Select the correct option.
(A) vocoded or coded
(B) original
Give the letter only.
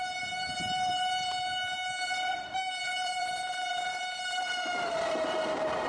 A